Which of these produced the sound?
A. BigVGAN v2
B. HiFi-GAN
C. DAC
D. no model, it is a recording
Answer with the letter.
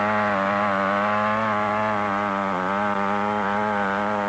D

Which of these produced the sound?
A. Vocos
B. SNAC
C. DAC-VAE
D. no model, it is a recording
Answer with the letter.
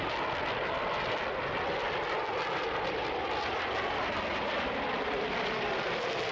D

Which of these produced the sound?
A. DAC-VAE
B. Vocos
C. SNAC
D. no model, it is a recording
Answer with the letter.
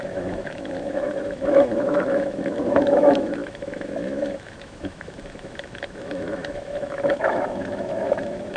A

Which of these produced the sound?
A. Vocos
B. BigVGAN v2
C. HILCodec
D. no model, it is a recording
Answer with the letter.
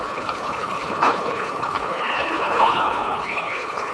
C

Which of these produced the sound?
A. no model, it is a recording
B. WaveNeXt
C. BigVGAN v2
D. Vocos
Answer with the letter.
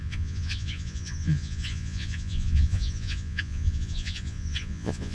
D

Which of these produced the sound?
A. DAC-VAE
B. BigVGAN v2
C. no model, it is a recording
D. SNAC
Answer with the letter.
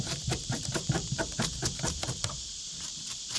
B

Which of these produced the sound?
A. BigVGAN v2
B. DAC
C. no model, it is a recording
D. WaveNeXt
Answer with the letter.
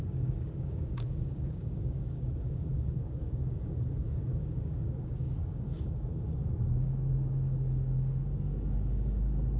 B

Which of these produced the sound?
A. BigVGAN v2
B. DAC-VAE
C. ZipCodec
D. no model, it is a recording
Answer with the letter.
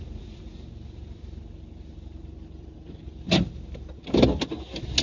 D